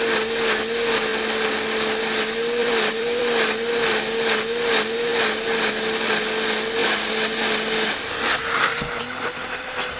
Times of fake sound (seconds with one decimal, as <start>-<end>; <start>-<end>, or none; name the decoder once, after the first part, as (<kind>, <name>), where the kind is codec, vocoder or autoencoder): 2.6-3.2 (vocoder, BigVGAN v2)